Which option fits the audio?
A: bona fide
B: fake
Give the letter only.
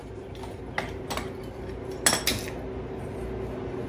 A